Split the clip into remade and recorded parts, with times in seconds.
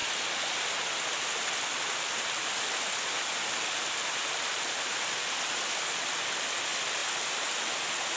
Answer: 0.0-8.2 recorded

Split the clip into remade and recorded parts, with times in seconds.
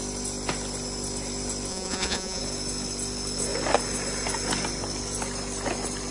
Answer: 0.0-1.7 recorded; 1.7-2.4 remade; 2.4-6.1 recorded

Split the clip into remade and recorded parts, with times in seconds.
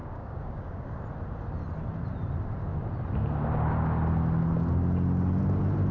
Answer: 0.0-1.0 remade; 1.0-5.9 recorded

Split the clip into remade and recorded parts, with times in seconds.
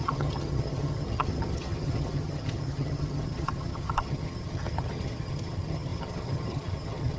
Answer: 0.0-7.2 remade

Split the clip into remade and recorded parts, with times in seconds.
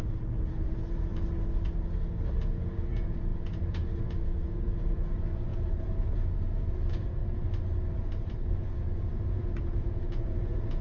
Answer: 0.0-1.1 remade; 1.1-2.4 recorded; 2.4-7.2 remade; 7.2-8.5 recorded; 8.5-10.8 remade